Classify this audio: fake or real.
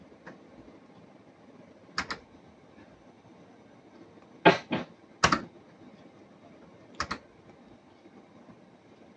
real